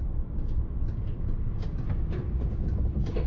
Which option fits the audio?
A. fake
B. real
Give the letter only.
B